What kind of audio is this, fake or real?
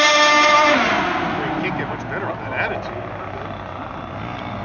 real